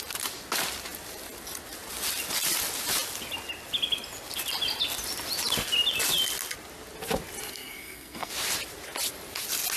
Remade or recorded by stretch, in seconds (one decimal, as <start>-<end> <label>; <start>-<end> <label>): 0.0-7.5 recorded; 7.5-8.3 remade; 8.3-9.8 recorded